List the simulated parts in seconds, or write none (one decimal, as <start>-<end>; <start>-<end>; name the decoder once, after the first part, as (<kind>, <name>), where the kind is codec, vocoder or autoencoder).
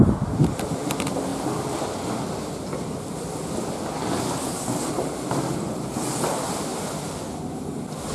none